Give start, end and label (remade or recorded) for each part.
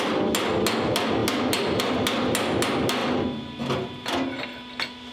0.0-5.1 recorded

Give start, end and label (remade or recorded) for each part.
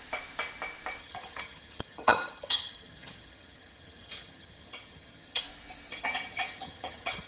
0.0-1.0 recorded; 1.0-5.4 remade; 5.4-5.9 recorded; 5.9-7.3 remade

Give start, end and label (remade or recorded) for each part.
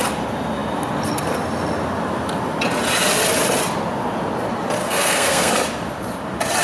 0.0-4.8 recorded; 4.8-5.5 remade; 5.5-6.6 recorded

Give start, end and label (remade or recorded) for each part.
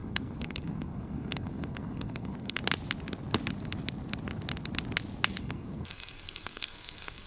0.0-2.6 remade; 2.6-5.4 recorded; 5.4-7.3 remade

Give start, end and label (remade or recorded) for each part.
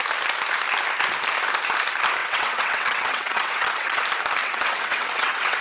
0.0-2.2 recorded; 2.2-4.0 remade; 4.0-4.4 recorded; 4.4-5.6 remade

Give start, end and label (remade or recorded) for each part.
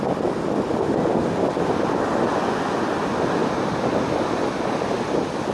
0.0-2.3 recorded; 2.3-2.8 remade; 2.8-5.5 recorded